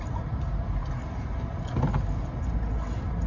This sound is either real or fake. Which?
real